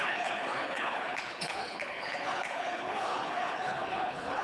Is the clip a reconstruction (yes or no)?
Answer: yes